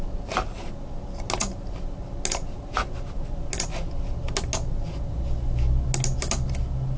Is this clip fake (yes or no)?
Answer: no